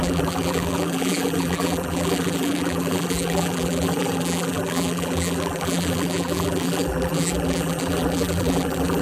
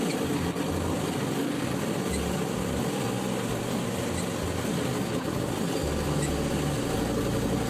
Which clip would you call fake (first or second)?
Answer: first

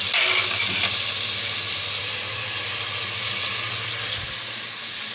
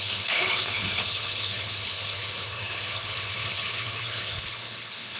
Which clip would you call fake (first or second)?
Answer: second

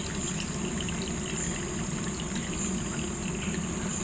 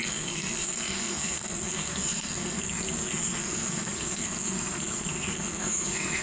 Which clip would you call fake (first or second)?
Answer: second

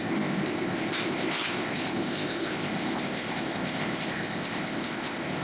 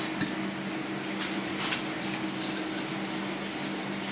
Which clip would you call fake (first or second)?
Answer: first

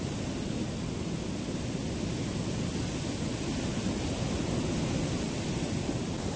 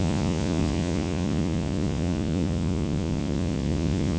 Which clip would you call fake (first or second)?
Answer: second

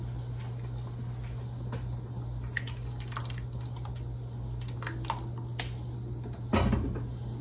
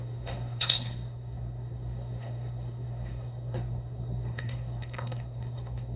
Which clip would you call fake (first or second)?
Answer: second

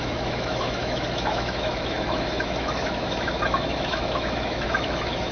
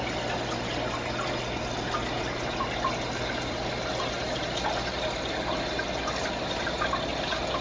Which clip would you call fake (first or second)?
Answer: first